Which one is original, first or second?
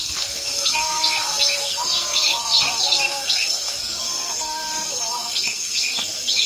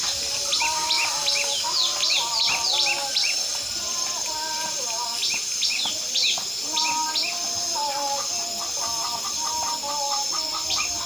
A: second